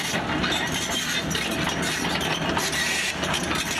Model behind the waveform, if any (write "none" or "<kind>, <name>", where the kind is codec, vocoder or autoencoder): none